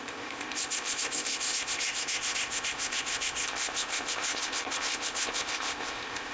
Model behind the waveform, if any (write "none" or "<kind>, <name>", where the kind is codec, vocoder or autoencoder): codec, ZipCodec